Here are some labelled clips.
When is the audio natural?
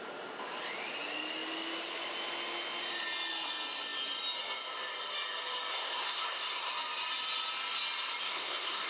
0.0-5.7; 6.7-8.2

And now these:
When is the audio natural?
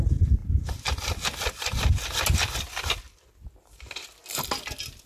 0.0-5.1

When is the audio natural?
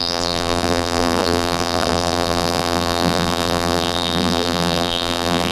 none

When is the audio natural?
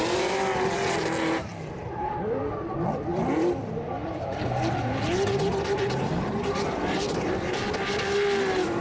0.0-4.0; 4.8-8.8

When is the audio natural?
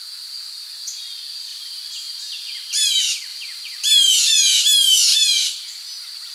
0.0-1.5; 2.9-3.3; 4.2-5.1; 5.7-6.3